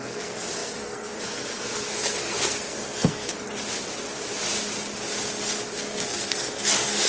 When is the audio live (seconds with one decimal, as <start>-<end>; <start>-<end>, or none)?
3.3-5.7